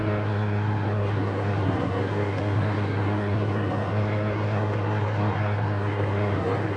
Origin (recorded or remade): remade